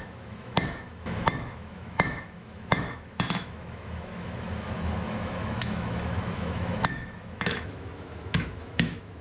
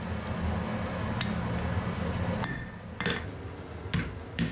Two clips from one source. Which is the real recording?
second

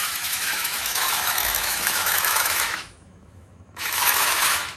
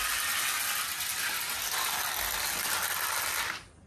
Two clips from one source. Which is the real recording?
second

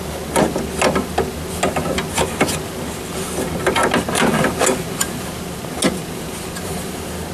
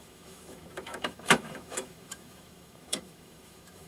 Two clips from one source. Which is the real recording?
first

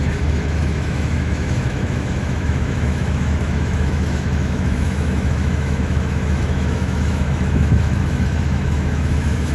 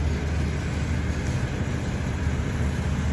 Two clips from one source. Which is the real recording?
second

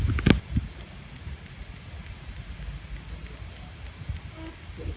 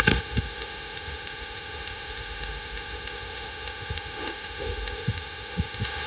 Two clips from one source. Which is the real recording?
first